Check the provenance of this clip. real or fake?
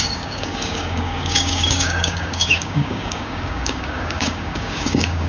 fake